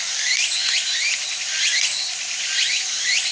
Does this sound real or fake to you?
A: real